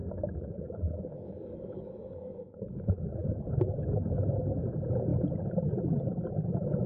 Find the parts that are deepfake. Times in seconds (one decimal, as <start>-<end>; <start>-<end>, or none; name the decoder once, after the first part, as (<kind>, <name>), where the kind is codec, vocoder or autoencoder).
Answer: 0.0-4.1 (codec, DAC)